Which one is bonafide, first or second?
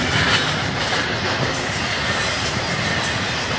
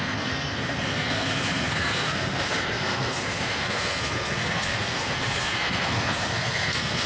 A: first